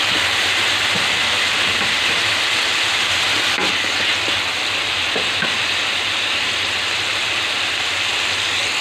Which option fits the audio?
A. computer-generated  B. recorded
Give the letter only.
B